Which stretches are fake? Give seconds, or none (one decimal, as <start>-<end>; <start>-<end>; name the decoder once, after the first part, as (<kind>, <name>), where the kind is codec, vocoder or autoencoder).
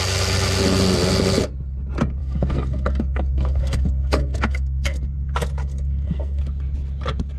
2.2-5.0 (codec, SNAC); 5.6-6.4